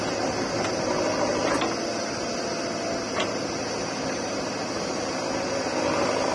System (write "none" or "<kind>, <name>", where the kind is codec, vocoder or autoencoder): none